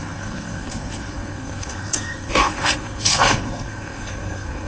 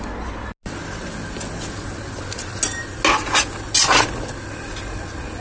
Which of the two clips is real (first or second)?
second